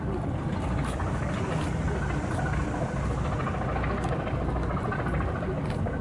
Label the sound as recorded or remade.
recorded